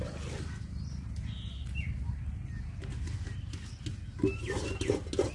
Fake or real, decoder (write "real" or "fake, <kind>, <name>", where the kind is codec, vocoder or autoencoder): real